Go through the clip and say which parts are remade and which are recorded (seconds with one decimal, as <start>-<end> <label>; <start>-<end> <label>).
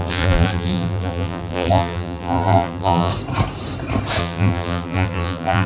0.0-3.1 remade; 3.1-4.2 recorded; 4.2-5.7 remade